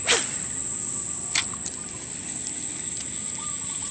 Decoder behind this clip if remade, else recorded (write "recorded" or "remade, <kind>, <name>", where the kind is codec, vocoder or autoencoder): recorded